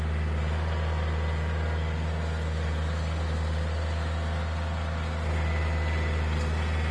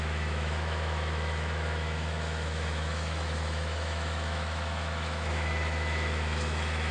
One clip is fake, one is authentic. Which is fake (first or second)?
second